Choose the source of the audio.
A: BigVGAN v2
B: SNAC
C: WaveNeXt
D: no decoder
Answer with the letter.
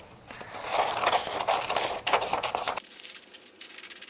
D